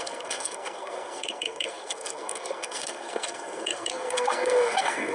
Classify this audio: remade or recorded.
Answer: remade